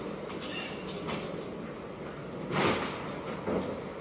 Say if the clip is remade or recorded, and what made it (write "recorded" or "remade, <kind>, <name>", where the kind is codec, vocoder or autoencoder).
recorded